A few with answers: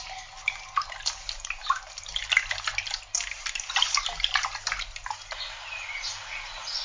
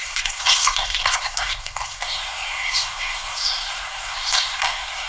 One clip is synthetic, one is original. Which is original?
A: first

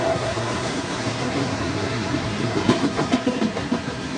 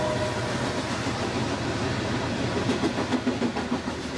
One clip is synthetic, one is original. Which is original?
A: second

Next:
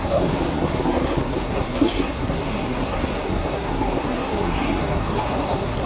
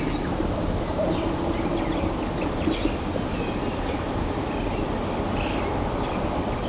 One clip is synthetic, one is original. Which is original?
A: second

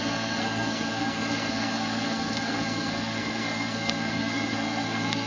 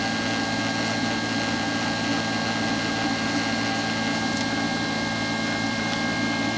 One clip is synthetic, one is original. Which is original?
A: second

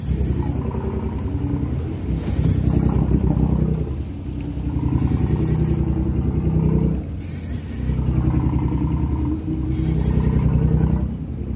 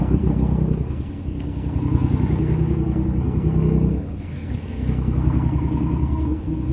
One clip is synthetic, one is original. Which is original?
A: first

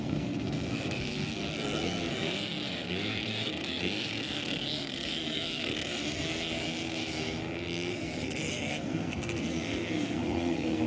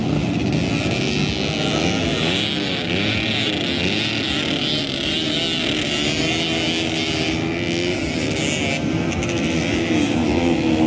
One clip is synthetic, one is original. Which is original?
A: second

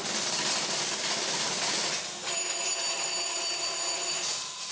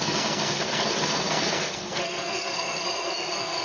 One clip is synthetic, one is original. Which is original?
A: first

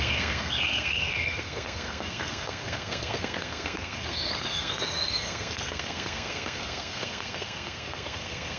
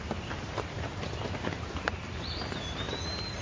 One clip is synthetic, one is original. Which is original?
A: second